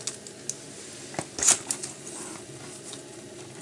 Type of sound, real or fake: real